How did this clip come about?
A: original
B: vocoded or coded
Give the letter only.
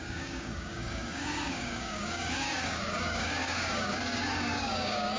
B